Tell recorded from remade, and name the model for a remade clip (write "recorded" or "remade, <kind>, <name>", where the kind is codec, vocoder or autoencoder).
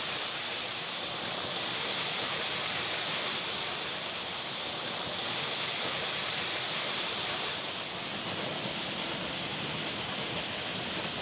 recorded